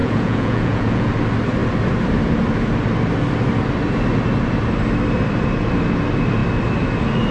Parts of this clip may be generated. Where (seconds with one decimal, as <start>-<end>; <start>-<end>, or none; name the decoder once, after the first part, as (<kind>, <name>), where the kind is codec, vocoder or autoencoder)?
0.0-1.1 (vocoder, Vocos)